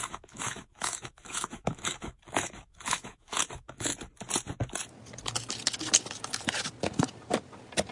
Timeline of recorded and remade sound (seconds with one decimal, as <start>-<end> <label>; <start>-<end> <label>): 0.0-3.9 remade; 3.9-7.9 recorded